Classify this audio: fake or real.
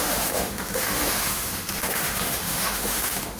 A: fake